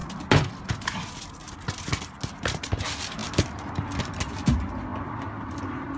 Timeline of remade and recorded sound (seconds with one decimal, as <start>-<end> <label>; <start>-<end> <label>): 0.0-6.0 recorded

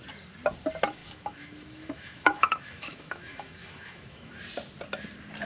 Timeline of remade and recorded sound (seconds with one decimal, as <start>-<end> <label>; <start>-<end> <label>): 0.0-1.0 recorded; 1.0-4.3 remade; 4.3-5.5 recorded

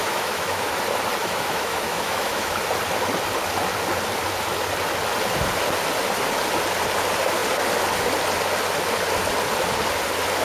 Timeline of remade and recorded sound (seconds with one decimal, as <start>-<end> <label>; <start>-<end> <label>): 0.0-0.7 remade; 0.7-1.2 recorded; 1.2-2.6 remade; 2.6-10.4 recorded

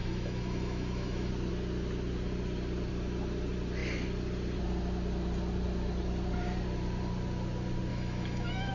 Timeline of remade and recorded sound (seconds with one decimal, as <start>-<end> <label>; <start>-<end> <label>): 0.0-1.3 remade; 1.3-7.9 recorded; 7.9-8.7 remade